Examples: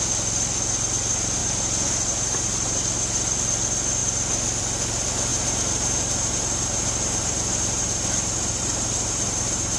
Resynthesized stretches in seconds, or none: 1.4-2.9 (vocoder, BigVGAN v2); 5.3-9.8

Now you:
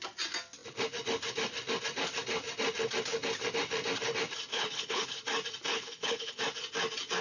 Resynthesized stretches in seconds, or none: 4.5-5.2 (codec, HILCodec); 5.7-6.4

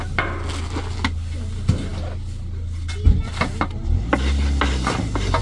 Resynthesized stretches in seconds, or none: none